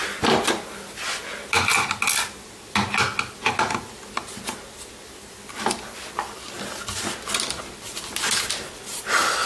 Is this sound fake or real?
real